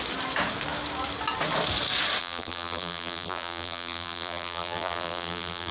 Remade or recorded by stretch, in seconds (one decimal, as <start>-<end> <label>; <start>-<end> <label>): 0.0-2.2 recorded; 2.2-5.7 remade